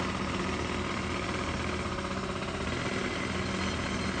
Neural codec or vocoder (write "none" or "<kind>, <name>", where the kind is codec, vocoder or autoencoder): none